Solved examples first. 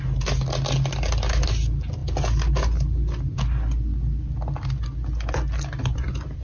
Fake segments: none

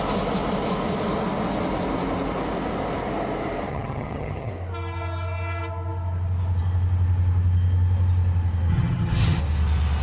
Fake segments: 3.7-4.5 (vocoder, HiFi-GAN); 8.7-9.4

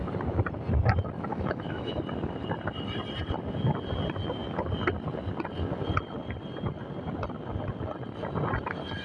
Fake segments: 1.3-2.0 (autoencoder, DAC-VAE)

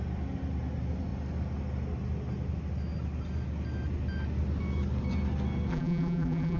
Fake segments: 5.7-6.6 (vocoder, BigVGAN v2)

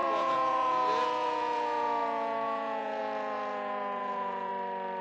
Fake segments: 0.0-4.5 (vocoder, Vocos)

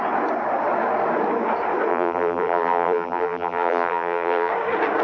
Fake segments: 1.9-4.5 (vocoder, BigVGAN v2)